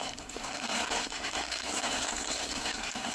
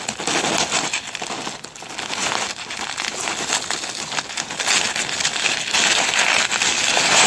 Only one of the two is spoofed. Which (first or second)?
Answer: first